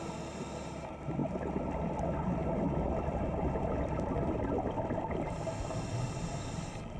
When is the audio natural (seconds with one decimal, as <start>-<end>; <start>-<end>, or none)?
0.0-7.0